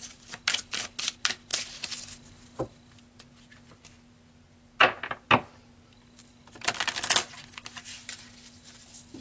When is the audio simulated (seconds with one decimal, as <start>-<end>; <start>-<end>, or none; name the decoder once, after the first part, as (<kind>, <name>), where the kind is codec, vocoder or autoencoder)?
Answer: none